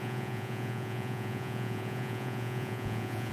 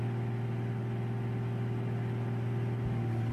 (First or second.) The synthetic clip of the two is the first